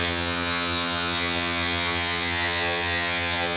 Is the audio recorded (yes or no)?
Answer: no